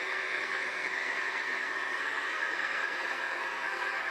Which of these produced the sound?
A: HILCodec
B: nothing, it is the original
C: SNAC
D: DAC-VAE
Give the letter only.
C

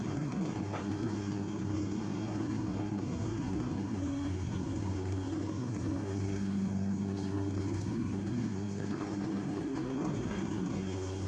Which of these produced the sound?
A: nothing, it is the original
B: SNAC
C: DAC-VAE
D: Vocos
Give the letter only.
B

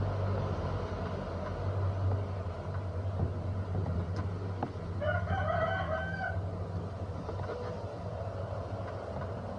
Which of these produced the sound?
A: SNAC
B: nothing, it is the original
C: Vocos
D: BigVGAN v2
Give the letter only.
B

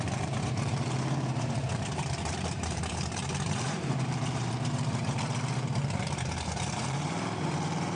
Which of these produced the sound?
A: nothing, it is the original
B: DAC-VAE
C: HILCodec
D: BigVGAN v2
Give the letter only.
D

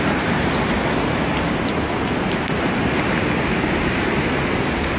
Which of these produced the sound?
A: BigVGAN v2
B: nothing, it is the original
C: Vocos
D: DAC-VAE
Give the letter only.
A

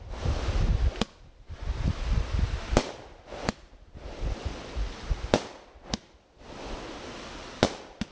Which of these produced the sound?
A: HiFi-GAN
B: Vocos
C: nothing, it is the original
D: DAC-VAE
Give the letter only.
C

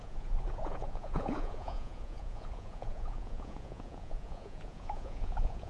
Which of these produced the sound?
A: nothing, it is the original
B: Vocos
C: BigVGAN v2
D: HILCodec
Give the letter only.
B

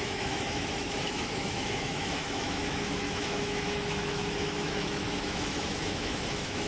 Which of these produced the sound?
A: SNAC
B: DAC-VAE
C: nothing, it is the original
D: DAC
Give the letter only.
B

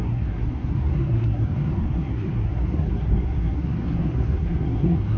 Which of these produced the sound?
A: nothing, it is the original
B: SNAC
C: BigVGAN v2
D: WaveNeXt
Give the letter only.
B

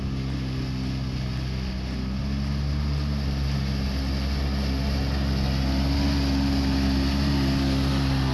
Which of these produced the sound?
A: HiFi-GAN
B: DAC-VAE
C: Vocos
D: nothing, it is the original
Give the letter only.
D